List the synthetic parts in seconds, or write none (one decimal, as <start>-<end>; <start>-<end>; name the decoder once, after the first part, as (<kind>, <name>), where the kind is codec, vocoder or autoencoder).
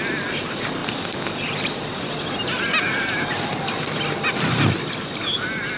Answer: none